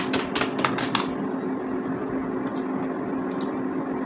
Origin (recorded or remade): recorded